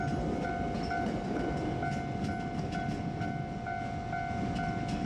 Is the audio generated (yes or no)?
no